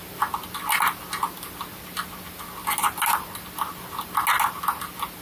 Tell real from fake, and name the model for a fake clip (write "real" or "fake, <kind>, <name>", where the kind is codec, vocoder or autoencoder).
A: real